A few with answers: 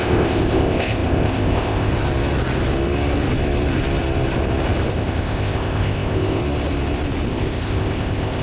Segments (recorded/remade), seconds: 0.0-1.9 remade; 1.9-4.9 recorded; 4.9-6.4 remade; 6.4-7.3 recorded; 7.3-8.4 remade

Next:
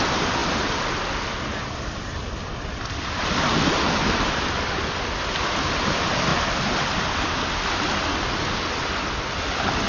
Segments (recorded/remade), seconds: 0.0-9.9 recorded

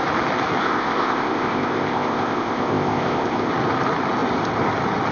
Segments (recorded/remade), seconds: 0.0-0.6 recorded; 0.6-3.5 remade; 3.5-5.1 recorded

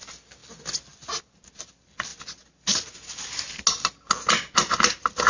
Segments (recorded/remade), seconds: 0.0-5.3 recorded

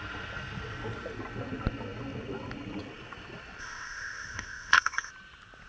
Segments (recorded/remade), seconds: 0.0-3.6 recorded; 3.6-5.1 remade; 5.1-5.7 recorded

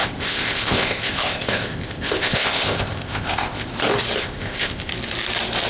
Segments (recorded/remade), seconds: 0.0-3.7 remade; 3.7-4.2 recorded; 4.2-4.9 remade; 4.9-5.7 recorded

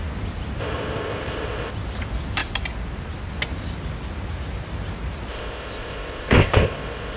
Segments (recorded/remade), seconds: 0.0-0.6 recorded; 0.6-1.7 remade; 1.7-5.3 recorded; 5.3-7.2 remade

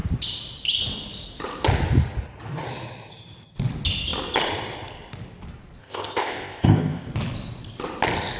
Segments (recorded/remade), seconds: 0.0-5.8 recorded; 5.8-7.1 remade; 7.1-8.4 recorded